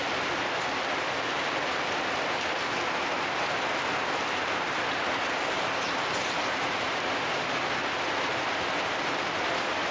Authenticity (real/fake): real